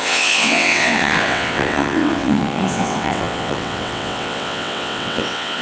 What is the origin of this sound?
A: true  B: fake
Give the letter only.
B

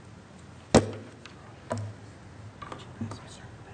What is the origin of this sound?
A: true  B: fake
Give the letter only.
A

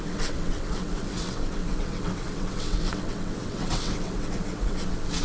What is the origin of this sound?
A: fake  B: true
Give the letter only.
A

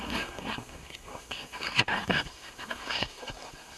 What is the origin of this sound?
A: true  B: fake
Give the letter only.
B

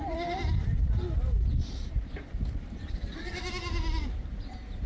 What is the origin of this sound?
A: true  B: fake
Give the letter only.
A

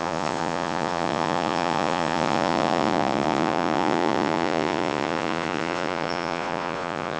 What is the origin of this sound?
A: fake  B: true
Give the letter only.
A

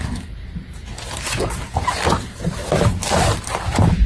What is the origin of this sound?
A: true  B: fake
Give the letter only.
A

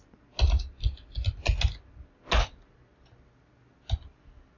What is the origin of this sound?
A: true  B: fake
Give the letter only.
A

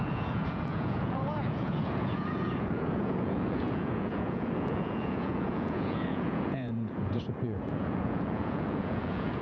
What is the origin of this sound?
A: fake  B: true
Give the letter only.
A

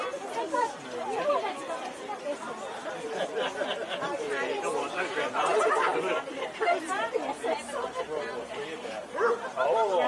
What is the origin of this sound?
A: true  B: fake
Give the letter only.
A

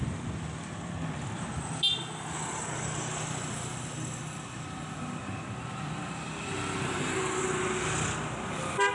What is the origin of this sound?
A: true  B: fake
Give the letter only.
A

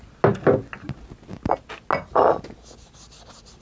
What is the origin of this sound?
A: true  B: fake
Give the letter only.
A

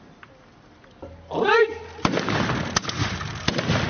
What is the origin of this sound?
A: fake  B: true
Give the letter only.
B